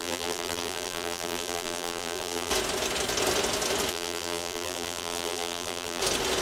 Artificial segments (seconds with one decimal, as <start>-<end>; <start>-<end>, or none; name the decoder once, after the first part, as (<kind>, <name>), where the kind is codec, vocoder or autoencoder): 0.0-2.5 (vocoder, BigVGAN v2); 3.9-6.0